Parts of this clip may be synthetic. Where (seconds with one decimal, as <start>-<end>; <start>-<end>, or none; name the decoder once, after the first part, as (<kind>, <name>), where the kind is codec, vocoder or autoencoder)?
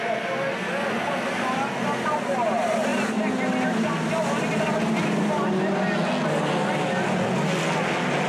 none